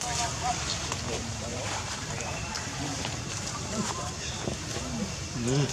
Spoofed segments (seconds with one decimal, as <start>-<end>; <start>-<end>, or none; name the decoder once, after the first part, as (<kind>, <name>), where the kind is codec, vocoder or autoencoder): 1.5-4.1 (vocoder, BigVGAN v2)